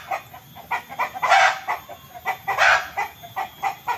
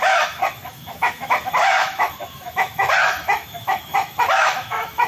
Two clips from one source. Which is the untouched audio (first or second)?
first